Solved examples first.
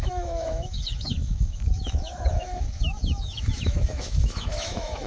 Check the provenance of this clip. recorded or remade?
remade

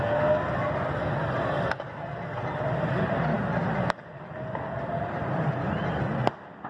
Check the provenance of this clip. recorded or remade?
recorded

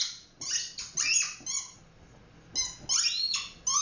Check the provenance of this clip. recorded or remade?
recorded